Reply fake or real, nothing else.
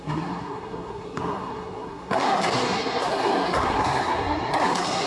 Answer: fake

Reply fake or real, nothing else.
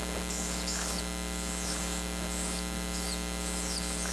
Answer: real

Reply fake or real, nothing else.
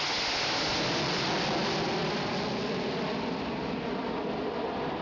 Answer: real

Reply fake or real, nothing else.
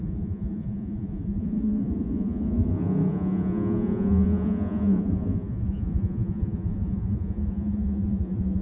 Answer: fake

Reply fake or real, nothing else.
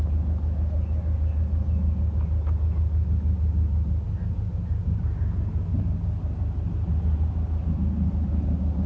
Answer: real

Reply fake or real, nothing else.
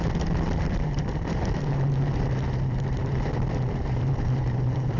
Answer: fake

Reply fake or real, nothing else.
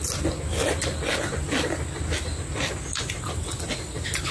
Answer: real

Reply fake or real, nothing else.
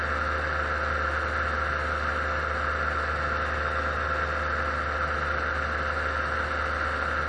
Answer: real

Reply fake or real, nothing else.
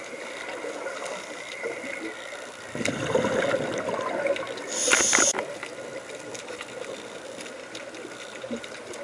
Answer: real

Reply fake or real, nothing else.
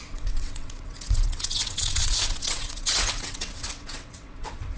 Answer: fake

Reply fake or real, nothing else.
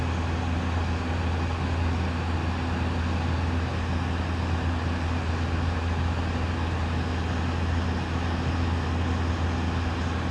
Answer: real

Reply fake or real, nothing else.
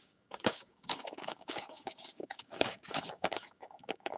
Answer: fake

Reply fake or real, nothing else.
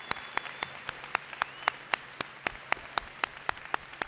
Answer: real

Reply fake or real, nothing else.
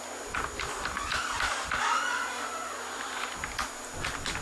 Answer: real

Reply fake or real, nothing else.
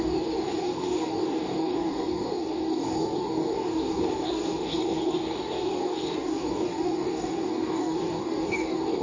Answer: fake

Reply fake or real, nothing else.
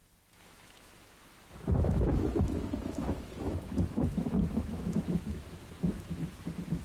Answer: fake